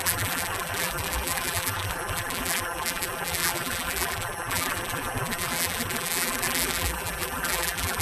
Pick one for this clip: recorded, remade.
remade